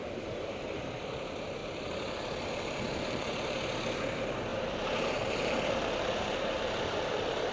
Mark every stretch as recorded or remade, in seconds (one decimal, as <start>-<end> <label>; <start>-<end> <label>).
0.0-1.6 recorded; 1.6-3.6 remade; 3.6-4.5 recorded; 4.5-7.5 remade